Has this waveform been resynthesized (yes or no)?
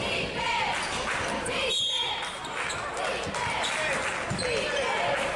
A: no